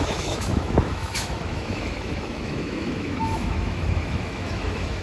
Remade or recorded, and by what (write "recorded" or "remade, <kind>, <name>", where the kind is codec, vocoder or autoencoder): remade, autoencoder, DAC-VAE